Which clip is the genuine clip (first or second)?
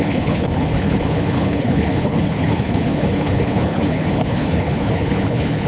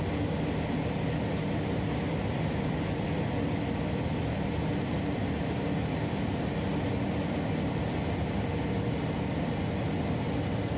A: second